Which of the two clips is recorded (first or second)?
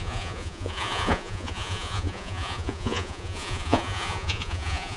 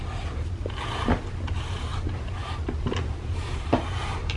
second